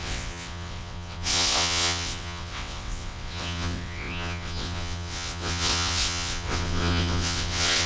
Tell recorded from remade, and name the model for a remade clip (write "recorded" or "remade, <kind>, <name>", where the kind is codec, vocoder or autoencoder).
remade, vocoder, WaveNeXt